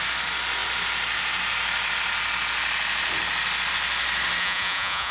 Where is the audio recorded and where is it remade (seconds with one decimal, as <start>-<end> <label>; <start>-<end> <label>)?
0.0-4.4 recorded; 4.4-5.1 remade